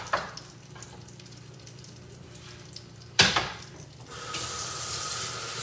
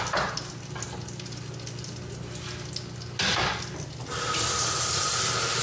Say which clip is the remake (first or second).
first